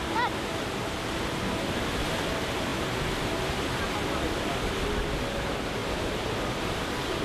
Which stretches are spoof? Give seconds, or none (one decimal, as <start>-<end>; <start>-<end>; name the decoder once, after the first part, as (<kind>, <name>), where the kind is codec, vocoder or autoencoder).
none